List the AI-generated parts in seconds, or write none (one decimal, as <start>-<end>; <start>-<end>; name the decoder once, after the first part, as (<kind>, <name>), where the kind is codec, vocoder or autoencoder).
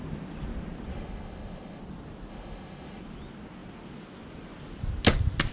0.9-1.8 (autoencoder, DAC-VAE); 2.3-3.0